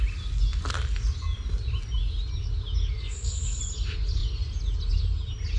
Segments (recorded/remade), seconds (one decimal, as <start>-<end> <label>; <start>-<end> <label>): 0.0-3.0 recorded; 3.0-3.6 remade; 3.6-5.6 recorded